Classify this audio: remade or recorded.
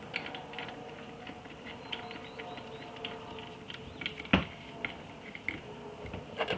recorded